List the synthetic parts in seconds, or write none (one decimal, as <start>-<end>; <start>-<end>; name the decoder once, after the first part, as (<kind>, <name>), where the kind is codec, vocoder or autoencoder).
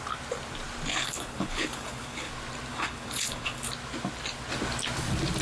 0.9-2.3 (codec, HILCodec); 2.7-3.7